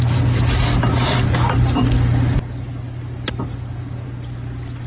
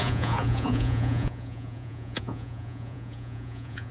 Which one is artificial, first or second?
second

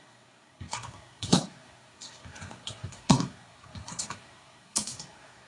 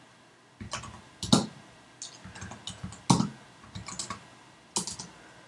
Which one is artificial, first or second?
first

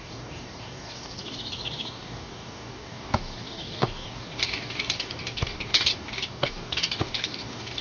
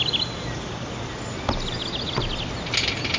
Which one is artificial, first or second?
first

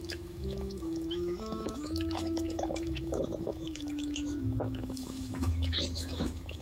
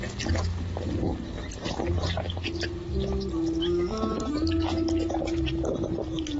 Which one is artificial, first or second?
first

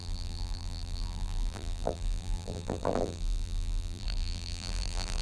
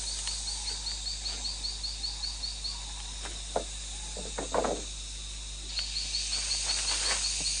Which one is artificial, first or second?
first